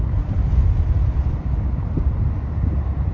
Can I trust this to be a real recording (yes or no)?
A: no